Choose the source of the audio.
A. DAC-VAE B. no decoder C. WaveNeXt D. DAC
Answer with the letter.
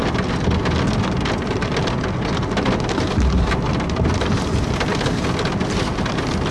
B